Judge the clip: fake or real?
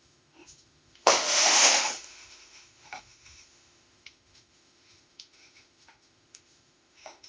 fake